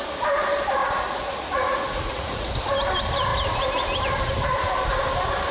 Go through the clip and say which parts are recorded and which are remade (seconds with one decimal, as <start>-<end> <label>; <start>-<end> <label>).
0.0-0.8 recorded; 0.8-2.5 remade; 2.5-5.5 recorded